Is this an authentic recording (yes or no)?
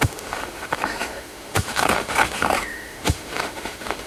no